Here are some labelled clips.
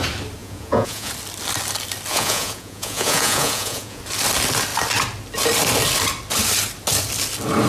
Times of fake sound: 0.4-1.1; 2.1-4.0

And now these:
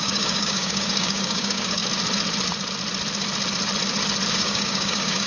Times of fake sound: 0.0-1.8; 4.3-5.3

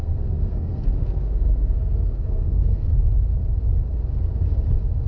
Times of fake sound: 0.0-2.9

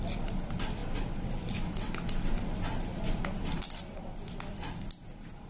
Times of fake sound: none

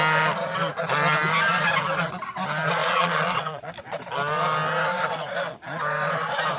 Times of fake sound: 2.8-3.6

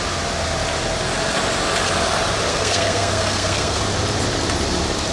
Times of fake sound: 2.5-3.8

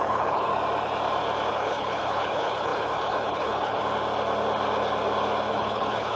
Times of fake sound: 0.0-0.5; 1.5-3.8; 5.5-6.2

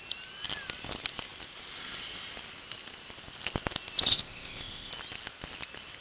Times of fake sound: 4.1-4.9